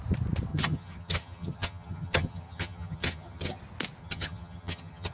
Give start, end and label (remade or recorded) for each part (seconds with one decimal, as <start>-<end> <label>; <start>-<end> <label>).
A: 0.0-0.5 recorded; 0.5-3.6 remade; 3.6-4.0 recorded; 4.0-5.1 remade